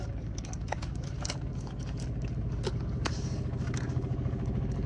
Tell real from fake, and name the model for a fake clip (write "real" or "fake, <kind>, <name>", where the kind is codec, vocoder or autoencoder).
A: fake, codec, DAC